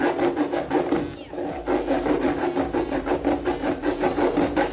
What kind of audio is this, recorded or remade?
recorded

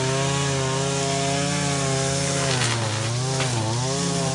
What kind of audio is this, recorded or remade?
recorded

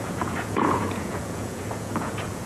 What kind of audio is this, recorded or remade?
remade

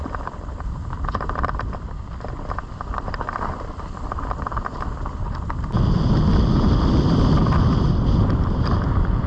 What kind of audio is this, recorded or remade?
remade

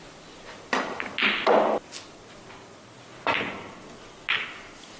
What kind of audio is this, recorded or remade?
recorded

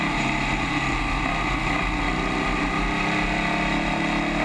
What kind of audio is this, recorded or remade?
recorded